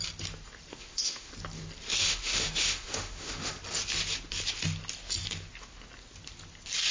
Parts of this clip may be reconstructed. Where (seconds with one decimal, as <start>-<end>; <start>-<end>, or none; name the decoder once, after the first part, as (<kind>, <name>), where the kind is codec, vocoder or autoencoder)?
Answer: 0.7-1.3 (autoencoder, DAC-VAE); 2.0-3.5